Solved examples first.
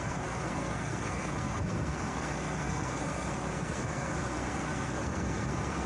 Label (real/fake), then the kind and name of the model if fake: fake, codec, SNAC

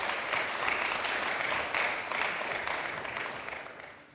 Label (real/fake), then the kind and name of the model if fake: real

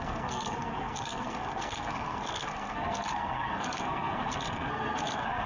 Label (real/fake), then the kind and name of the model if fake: fake, codec, SNAC